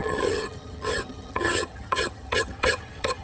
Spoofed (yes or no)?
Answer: yes